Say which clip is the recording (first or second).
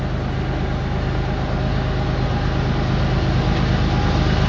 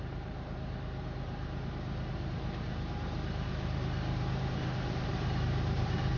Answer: first